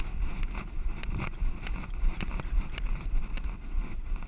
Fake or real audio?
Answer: real